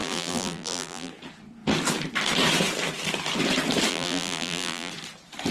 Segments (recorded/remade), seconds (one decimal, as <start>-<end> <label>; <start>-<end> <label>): 0.0-1.1 remade; 1.1-3.9 recorded; 3.9-4.9 remade; 4.9-5.5 recorded

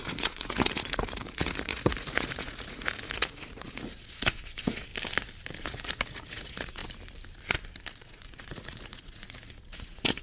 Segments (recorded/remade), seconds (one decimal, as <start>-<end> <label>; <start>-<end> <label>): 0.0-4.9 remade; 4.9-5.6 recorded; 5.6-6.8 remade; 6.8-7.9 recorded; 7.9-10.2 remade

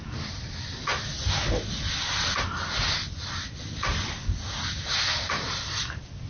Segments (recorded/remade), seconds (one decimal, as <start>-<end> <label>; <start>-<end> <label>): 0.0-6.3 recorded

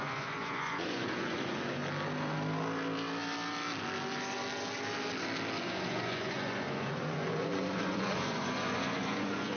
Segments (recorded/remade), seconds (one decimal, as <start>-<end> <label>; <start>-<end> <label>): 0.0-1.8 remade; 1.8-5.6 recorded; 5.6-9.6 remade

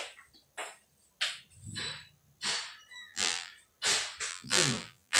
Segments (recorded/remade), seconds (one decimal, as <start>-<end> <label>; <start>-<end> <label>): 0.0-2.9 recorded; 2.9-3.5 remade; 3.5-4.3 recorded; 4.3-5.2 remade